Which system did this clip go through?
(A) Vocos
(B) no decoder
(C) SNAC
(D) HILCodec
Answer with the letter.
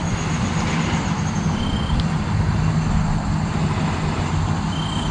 B